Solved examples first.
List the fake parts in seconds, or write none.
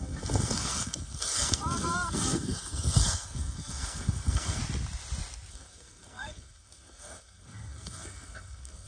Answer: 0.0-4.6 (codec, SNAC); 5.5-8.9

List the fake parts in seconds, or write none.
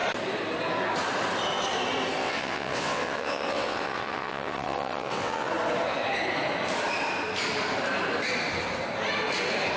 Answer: 2.2-5.5 (vocoder, WaveNeXt)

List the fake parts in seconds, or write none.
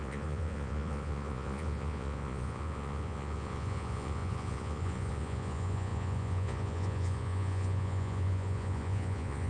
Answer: 0.0-9.5 (vocoder, Vocos)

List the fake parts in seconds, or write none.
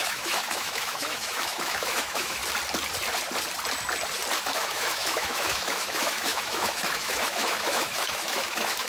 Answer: 0.0-2.4 (autoencoder, DAC-VAE); 4.4-8.9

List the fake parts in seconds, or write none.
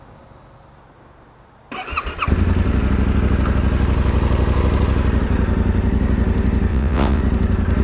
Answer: 6.7-7.2 (vocoder, WaveNeXt)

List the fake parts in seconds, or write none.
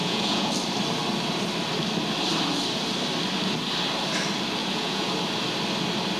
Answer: 0.0-0.5 (vocoder, Vocos); 4.6-5.1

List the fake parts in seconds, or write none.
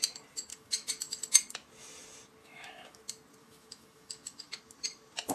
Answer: 0.5-1.2 (autoencoder, DAC-VAE); 2.4-3.0; 3.4-4.6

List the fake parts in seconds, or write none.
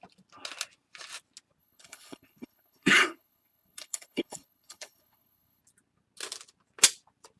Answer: 1.6-5.6 (codec, HILCodec)